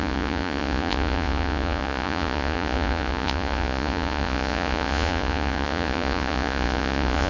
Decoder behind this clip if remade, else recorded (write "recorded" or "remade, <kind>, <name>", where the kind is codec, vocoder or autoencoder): remade, vocoder, Vocos